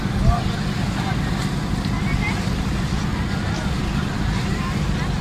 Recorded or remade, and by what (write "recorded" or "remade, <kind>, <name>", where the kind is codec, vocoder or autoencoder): recorded